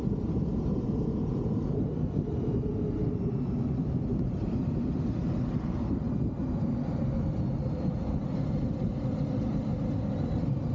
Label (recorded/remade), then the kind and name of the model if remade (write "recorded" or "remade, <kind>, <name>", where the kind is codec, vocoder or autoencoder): recorded